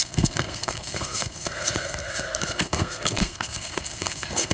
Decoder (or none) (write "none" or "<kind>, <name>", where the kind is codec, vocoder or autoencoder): codec, SNAC